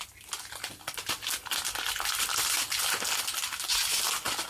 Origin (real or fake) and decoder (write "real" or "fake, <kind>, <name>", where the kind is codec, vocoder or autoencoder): real